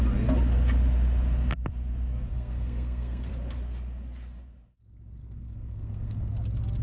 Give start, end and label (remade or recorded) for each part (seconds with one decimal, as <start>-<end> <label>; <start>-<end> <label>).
0.0-2.3 recorded; 2.3-3.3 remade; 3.3-5.2 recorded; 5.2-6.3 remade; 6.3-6.8 recorded